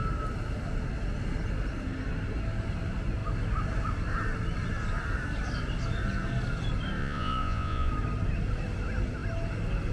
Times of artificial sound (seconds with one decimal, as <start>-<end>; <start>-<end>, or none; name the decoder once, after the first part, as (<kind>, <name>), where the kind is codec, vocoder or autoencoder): 7.0-7.9 (vocoder, Vocos)